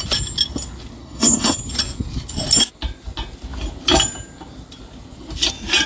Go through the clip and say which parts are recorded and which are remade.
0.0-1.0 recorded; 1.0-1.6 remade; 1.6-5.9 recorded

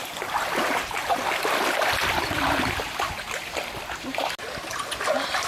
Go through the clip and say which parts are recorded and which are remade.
0.0-5.5 recorded

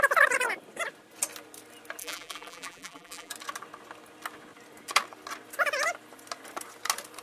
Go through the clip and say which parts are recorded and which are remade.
0.0-2.0 recorded; 2.0-3.3 remade; 3.3-7.2 recorded